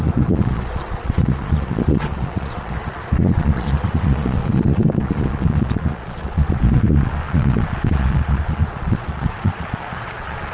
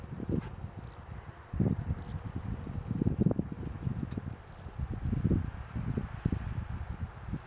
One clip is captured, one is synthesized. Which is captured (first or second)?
second